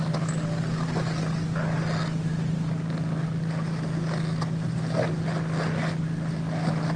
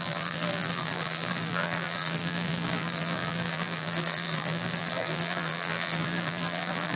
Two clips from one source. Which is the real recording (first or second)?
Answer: first